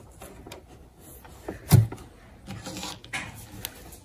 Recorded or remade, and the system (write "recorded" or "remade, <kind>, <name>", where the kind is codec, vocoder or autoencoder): recorded